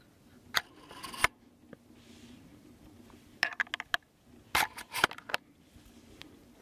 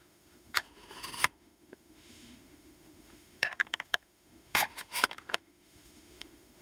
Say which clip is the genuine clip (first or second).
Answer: first